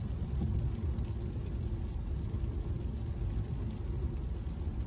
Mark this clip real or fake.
real